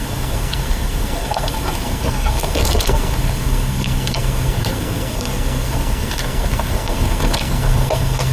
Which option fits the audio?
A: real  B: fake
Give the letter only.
B